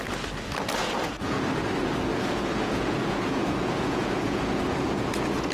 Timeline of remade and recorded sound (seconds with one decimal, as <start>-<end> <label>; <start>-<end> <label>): 0.0-0.8 recorded; 0.8-1.4 remade; 1.4-2.1 recorded; 2.1-5.5 remade